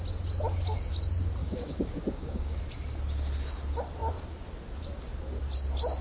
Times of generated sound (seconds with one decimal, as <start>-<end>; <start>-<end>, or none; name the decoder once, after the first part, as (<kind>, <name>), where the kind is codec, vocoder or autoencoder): 1.4-2.6 (codec, DAC)